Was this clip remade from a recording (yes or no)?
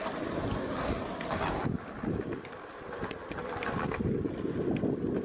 no